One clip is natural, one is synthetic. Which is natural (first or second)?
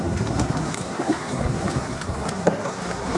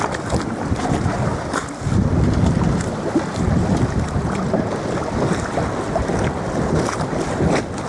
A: second